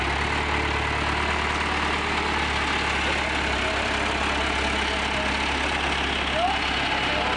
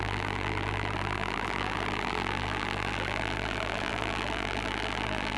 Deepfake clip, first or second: second